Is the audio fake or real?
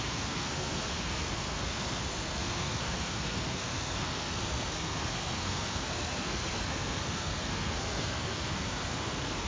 fake